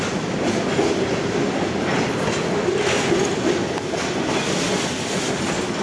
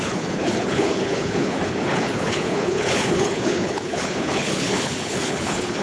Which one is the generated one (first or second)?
second